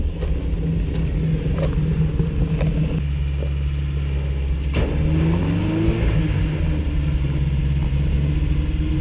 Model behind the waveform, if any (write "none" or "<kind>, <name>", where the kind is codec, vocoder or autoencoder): none